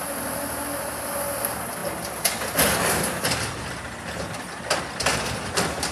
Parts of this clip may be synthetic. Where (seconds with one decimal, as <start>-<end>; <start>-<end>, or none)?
none